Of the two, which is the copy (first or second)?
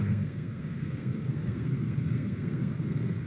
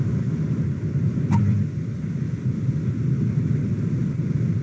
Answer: first